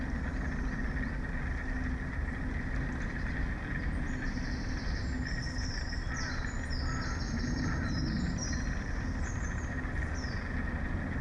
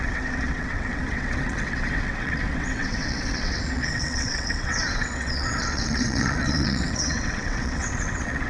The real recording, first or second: first